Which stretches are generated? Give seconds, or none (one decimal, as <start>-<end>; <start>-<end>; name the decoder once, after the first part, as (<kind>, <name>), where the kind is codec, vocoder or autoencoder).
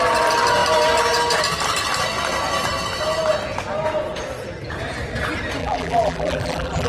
5.6-6.9 (vocoder, BigVGAN v2)